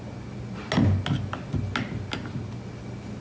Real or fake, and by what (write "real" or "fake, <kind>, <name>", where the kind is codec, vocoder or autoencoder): real